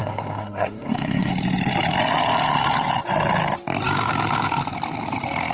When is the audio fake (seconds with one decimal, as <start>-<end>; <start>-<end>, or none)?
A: 0.0-1.3